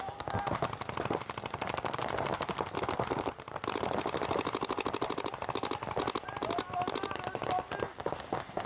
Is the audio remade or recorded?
recorded